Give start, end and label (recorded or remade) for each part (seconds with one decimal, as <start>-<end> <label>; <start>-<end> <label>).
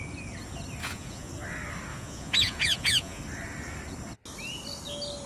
0.0-0.8 recorded; 0.8-1.3 remade; 1.3-1.9 recorded; 1.9-3.2 remade; 3.2-5.3 recorded